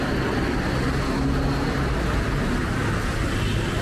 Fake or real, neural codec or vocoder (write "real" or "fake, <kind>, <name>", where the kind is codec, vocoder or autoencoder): real